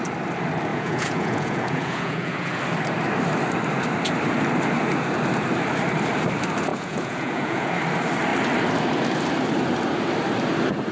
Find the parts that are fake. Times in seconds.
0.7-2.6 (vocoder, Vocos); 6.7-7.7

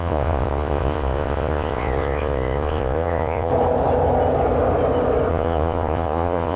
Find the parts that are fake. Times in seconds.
0.0-3.5 (vocoder, Vocos); 5.3-6.6